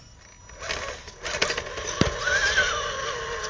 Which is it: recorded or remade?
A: recorded